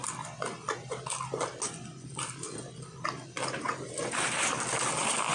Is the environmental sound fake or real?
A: real